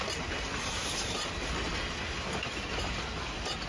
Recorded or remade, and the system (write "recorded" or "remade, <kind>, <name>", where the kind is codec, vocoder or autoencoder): recorded